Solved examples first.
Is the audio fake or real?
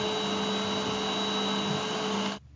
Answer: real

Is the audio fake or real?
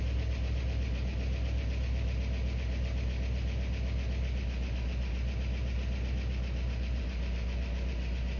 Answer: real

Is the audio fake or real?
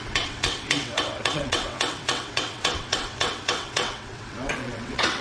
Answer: fake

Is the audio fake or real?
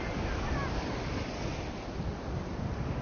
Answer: real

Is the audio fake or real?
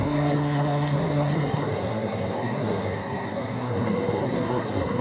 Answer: fake